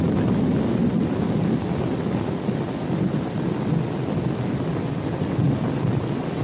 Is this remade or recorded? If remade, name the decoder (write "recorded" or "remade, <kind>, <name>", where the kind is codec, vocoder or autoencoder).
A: recorded